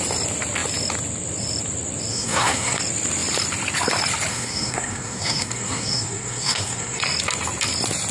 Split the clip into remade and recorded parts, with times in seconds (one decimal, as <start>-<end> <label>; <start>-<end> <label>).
0.0-2.1 recorded; 2.1-2.8 remade; 2.8-4.3 recorded; 4.3-7.0 remade; 7.0-8.1 recorded